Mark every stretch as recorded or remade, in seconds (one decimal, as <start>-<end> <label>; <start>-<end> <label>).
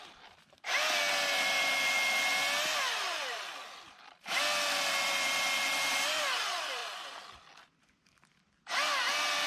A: 0.0-9.5 recorded